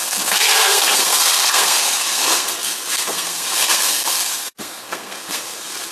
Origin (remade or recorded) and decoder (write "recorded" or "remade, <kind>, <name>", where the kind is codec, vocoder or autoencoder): remade, codec, SNAC